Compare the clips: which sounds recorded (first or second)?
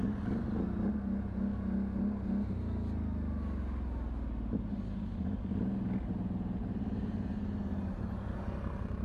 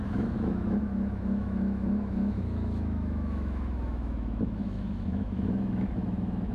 first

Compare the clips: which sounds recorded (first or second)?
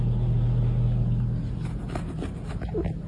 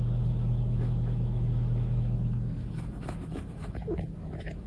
first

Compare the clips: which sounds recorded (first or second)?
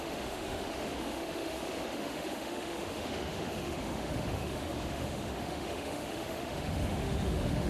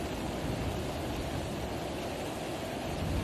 second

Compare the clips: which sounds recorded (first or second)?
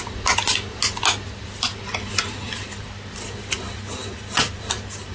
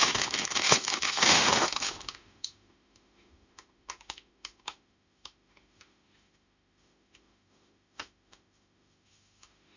first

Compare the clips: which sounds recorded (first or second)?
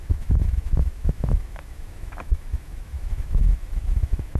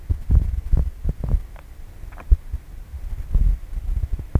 second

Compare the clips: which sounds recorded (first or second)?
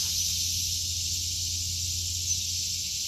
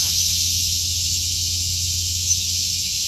first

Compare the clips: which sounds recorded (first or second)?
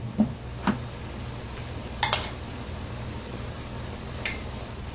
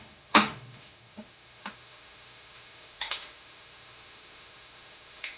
first